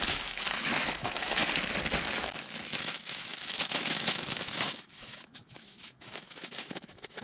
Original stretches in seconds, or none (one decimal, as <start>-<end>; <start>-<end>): 1.4-2.1